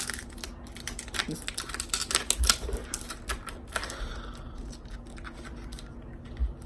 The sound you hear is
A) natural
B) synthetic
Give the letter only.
A